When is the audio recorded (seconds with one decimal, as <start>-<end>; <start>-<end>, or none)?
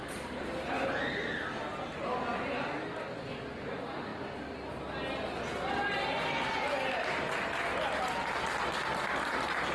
0.0-7.7; 8.2-9.7